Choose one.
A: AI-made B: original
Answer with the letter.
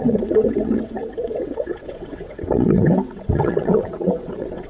A